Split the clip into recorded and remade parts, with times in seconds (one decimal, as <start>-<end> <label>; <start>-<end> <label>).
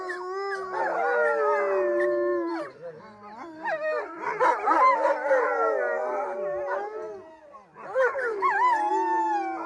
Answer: 0.0-8.3 recorded; 8.3-8.9 remade; 8.9-9.7 recorded